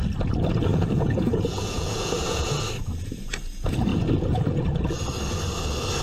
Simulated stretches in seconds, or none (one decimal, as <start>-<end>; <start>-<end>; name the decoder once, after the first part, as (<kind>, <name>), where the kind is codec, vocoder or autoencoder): 0.7-2.5 (vocoder, Vocos); 3.9-4.8

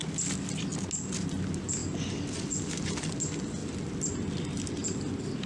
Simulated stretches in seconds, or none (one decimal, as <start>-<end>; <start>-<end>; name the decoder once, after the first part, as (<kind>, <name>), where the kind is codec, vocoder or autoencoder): none

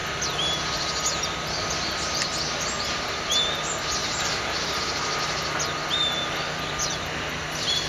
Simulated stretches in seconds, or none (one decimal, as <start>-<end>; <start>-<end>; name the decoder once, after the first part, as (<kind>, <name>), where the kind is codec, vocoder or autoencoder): 4.0-5.1 (vocoder, BigVGAN v2)

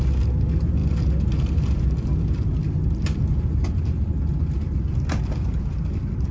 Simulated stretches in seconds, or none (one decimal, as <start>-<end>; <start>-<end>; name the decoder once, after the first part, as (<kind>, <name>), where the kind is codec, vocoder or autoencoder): none

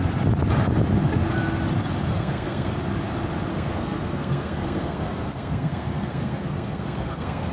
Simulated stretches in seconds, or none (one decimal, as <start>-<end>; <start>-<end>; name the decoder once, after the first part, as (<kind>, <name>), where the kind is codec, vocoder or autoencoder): 2.1-2.7 (codec, SNAC); 3.5-7.5

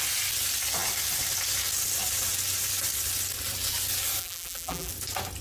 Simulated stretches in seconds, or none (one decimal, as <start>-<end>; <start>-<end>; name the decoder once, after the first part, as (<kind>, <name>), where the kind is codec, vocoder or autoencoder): 4.2-4.9 (vocoder, BigVGAN v2)

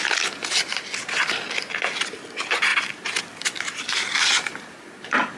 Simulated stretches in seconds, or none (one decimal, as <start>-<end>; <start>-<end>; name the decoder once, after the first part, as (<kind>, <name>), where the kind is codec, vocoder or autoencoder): none